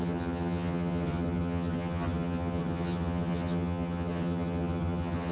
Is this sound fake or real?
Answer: fake